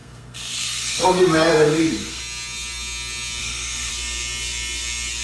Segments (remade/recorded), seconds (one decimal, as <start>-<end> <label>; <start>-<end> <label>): 0.0-2.2 remade; 2.2-3.4 recorded; 3.4-3.9 remade; 3.9-5.2 recorded